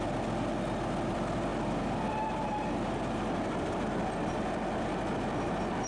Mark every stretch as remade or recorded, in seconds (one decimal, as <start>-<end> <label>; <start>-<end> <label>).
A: 0.0-5.9 recorded

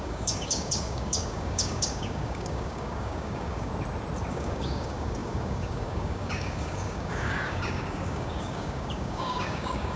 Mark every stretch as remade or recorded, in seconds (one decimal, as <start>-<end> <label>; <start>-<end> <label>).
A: 0.0-3.7 remade; 3.7-4.3 recorded; 4.3-10.0 remade

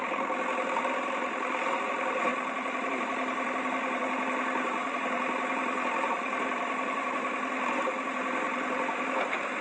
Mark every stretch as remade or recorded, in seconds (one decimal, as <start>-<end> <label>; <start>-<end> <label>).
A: 0.0-0.8 recorded; 0.8-9.6 remade